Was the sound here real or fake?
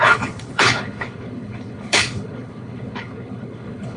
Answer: fake